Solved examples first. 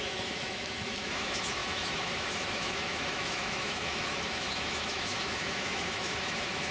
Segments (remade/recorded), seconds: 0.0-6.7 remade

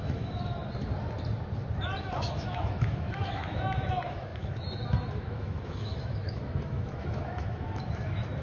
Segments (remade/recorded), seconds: 0.0-0.6 remade; 0.6-2.0 recorded; 2.0-8.4 remade

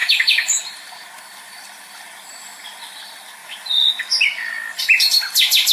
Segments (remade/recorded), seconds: 0.0-0.6 remade; 0.6-5.7 recorded

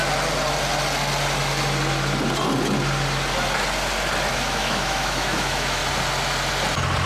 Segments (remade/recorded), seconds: 0.0-4.3 recorded; 4.3-5.8 remade; 5.8-7.1 recorded

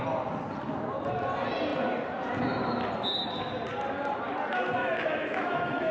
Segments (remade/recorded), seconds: 0.0-4.8 recorded; 4.8-5.9 remade